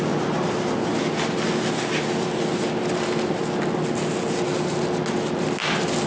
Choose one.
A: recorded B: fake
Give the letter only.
A